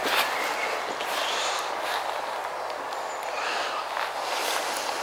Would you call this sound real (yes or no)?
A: yes